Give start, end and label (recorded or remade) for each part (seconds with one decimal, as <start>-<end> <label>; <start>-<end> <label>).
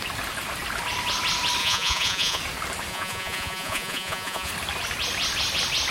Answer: 0.0-1.6 recorded; 1.6-2.4 remade; 2.4-2.9 recorded; 2.9-4.5 remade; 4.5-5.9 recorded